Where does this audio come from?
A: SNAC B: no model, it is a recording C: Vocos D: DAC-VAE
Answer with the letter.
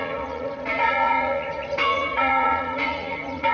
C